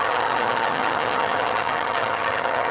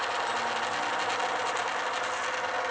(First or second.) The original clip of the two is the second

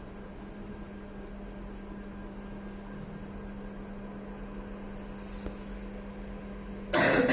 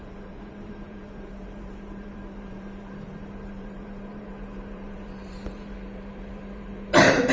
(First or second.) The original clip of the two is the first